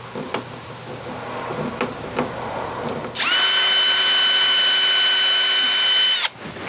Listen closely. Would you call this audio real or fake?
real